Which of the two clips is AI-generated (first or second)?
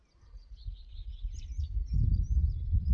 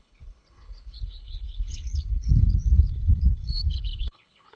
second